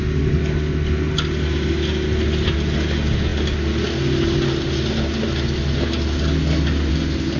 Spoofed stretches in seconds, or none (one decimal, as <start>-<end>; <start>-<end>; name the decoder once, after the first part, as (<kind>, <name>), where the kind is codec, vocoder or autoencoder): none